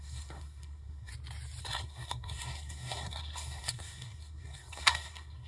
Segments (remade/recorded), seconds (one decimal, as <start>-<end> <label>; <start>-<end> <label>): 0.0-1.1 remade; 1.1-1.6 recorded; 1.6-5.5 remade